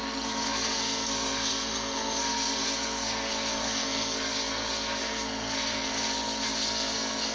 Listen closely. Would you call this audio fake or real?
fake